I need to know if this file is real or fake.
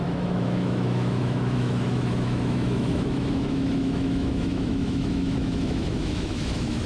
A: fake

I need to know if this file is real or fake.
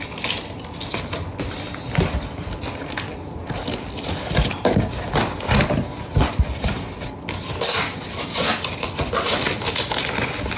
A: real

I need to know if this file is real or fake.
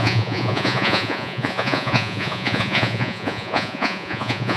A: fake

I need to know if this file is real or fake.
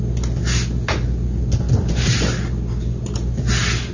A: real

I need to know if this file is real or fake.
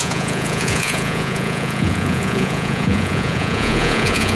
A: fake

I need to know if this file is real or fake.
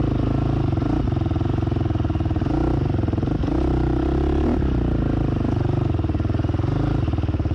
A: real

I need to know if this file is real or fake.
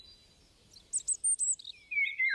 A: real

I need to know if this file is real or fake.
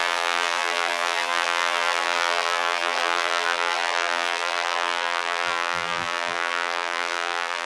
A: fake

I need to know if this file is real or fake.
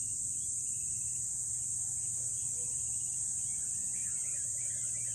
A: real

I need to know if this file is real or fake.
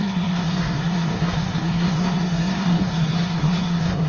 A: fake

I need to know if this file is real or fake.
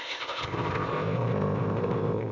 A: fake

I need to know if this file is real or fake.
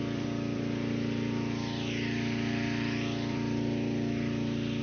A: fake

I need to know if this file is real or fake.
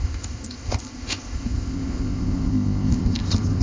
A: fake